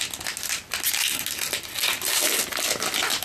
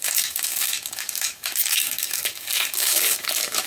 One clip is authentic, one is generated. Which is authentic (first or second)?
first